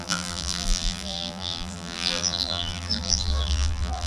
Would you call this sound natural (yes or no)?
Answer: no